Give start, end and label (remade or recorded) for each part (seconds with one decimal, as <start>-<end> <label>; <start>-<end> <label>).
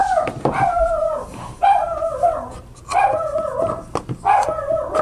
0.0-3.0 remade; 3.0-5.0 recorded